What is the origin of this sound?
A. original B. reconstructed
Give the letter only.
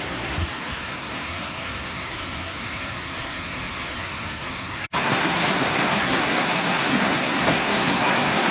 B